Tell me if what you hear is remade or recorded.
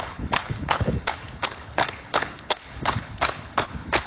remade